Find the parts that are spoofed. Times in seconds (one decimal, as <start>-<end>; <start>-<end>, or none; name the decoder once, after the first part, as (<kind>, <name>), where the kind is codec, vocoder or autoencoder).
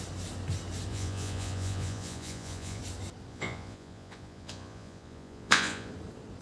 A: 0.9-2.8 (vocoder, Vocos); 3.3-5.9